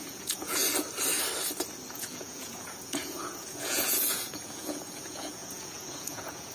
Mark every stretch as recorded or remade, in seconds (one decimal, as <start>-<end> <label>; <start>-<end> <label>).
0.0-0.6 remade; 0.6-1.9 recorded; 1.9-6.5 remade